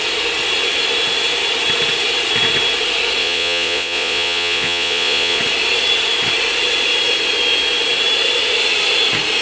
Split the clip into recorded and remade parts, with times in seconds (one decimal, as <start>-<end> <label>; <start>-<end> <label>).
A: 0.0-3.2 recorded; 3.2-5.4 remade; 5.4-9.4 recorded